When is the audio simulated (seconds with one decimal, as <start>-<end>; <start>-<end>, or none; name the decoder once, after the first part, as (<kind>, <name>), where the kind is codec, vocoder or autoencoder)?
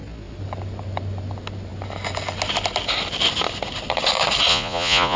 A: 4.5-5.2 (vocoder, Vocos)